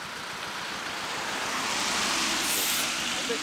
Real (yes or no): no